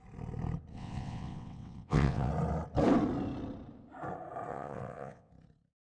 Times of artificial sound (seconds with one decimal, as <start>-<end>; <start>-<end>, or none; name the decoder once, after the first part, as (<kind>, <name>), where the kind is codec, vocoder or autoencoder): 0.7-2.3 (vocoder, WaveNeXt); 4.5-5.3